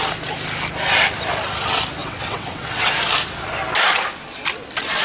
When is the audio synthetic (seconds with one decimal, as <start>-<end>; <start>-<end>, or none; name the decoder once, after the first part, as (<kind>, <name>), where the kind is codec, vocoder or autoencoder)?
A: 2.0-2.9 (vocoder, WaveNeXt)